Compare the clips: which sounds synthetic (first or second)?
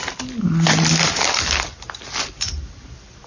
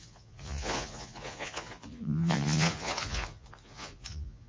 second